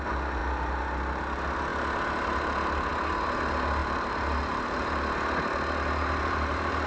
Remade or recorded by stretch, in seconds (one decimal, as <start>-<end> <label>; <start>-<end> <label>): 0.0-3.8 recorded; 3.8-5.0 remade; 5.0-6.2 recorded; 6.2-6.9 remade